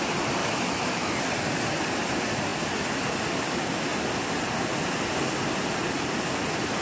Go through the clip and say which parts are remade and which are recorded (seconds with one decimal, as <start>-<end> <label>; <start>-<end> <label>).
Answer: 0.0-0.4 recorded; 0.4-1.2 remade; 1.2-6.8 recorded